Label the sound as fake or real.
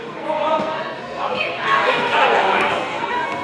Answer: fake